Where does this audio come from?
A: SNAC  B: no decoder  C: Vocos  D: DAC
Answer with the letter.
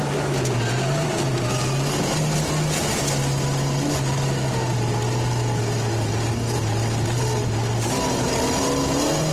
B